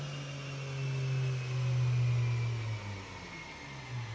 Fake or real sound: real